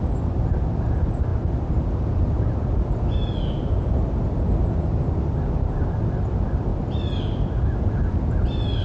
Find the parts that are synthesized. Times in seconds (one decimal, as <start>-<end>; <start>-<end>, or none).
none